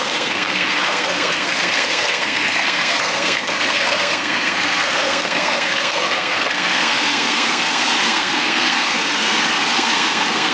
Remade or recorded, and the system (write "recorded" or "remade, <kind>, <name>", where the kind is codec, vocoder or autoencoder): remade, codec, SNAC